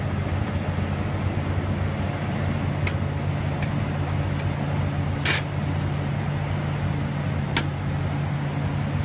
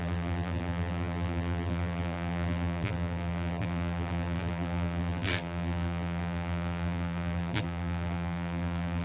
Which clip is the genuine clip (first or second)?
first